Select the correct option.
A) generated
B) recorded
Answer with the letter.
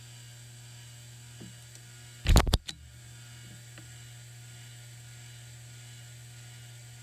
B